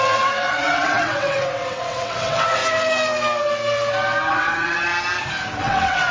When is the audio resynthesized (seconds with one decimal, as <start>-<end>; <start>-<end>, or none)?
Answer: 0.0-2.6; 4.3-4.9; 5.6-6.1